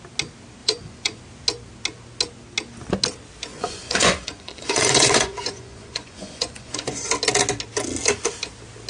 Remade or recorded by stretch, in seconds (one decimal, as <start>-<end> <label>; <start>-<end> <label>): 0.0-0.6 recorded; 0.6-1.2 remade; 1.2-3.5 recorded; 3.5-7.1 remade; 7.1-8.9 recorded